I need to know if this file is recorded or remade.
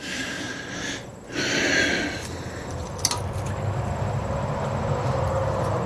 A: recorded